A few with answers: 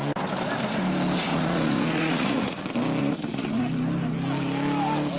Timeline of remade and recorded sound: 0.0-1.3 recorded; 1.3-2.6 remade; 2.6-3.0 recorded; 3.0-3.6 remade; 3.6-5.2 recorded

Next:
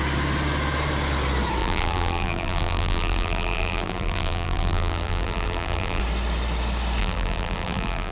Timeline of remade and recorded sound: 0.0-1.6 recorded; 1.6-6.0 remade; 6.0-7.0 recorded; 7.0-8.1 remade